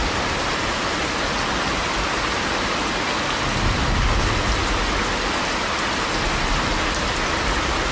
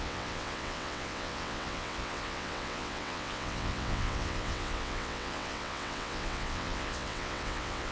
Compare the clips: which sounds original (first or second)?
first